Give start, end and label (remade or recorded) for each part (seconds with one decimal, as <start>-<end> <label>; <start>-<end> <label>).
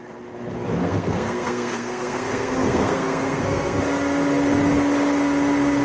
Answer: 0.0-0.8 recorded; 0.8-3.8 remade; 3.8-5.8 recorded